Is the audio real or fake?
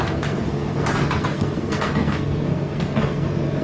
fake